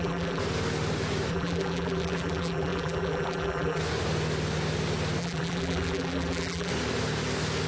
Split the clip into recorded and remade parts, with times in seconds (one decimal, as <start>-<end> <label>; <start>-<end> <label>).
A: 0.0-0.4 remade; 0.4-1.3 recorded; 1.3-3.8 remade; 3.8-5.2 recorded; 5.2-6.7 remade; 6.7-7.7 recorded

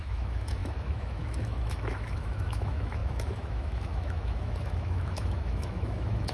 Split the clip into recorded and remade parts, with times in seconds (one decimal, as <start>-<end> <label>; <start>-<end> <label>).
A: 0.0-6.3 remade

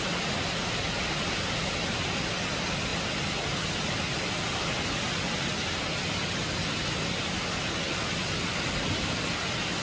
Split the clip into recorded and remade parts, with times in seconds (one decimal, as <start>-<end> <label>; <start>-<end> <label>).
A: 0.0-9.8 recorded

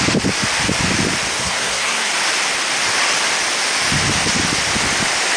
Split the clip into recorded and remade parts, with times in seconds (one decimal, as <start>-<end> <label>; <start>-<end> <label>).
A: 0.0-1.4 recorded; 1.4-2.1 remade; 2.1-5.4 recorded

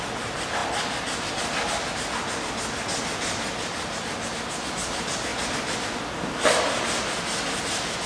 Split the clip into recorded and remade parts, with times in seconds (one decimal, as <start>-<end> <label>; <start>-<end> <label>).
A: 0.0-8.1 recorded

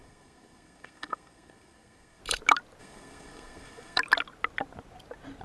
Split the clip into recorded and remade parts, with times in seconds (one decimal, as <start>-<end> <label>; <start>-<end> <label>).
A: 0.0-2.2 remade; 2.2-2.8 recorded; 2.8-4.0 remade; 4.0-5.4 recorded

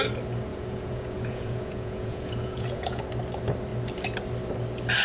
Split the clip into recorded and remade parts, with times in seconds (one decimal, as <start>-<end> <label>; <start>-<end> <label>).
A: 0.0-0.5 recorded; 0.5-3.0 remade; 3.0-5.0 recorded